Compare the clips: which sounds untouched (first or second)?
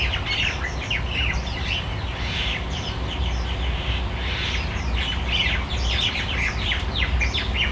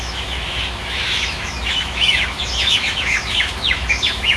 first